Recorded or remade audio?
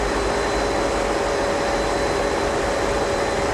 recorded